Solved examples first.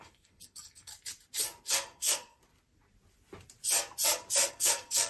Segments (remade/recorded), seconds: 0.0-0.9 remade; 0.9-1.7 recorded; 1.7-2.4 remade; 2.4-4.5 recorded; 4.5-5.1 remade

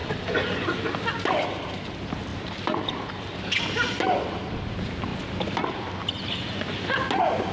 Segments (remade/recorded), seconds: 0.0-7.5 recorded

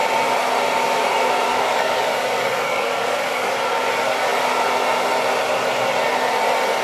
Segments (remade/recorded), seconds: 0.0-1.5 recorded; 1.5-3.5 remade; 3.5-6.8 recorded

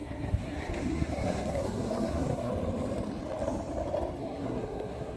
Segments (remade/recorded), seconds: 0.0-2.5 remade; 2.5-4.2 recorded; 4.2-5.2 remade

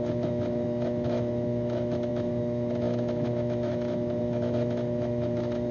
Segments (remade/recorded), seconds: 0.0-5.7 remade